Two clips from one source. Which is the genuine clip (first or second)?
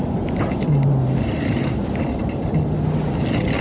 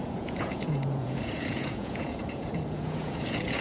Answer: first